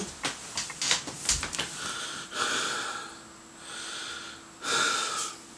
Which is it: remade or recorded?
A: recorded